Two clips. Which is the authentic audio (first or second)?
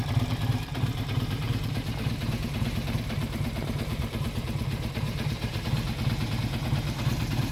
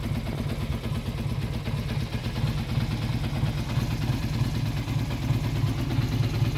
second